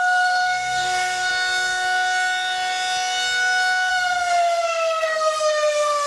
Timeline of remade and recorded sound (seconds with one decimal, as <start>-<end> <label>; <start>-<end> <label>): 0.0-1.3 remade; 1.3-3.9 recorded; 3.9-6.1 remade